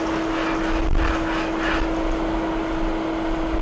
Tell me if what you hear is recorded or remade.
recorded